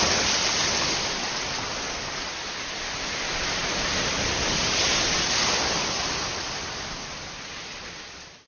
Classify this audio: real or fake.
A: real